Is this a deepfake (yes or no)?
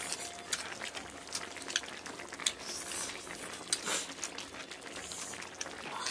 no